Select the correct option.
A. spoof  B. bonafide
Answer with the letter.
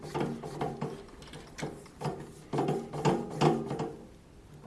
B